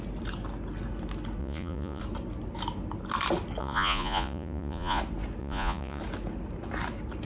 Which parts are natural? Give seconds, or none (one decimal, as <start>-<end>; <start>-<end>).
0.0-1.4; 2.0-3.6; 5.0-5.4; 6.0-7.3